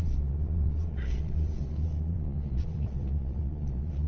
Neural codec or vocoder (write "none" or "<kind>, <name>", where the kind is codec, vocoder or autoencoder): vocoder, Vocos